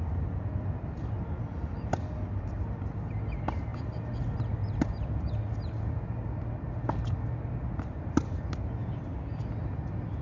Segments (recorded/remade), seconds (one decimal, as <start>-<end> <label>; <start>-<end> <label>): 0.0-10.2 recorded